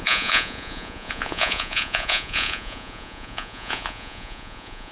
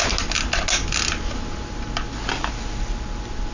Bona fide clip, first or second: second